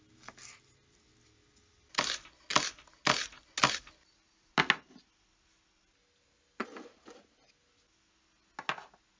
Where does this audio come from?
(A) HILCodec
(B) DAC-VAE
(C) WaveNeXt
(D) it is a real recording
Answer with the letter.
D